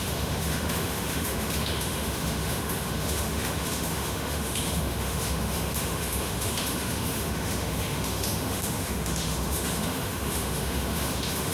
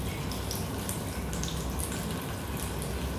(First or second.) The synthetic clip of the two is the first